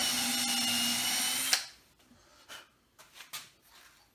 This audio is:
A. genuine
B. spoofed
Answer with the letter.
A